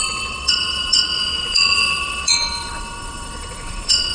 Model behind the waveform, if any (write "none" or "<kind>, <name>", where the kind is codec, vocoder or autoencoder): vocoder, WaveNeXt